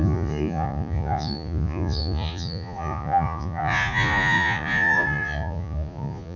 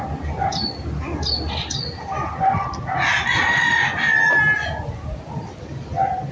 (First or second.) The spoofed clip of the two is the first